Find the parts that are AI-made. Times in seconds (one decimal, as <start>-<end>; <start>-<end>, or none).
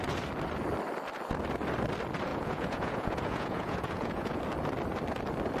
2.3-4.4